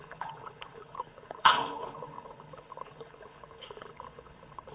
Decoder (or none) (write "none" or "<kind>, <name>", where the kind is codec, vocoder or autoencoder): codec, HILCodec